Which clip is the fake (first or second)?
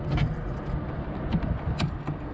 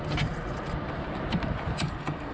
second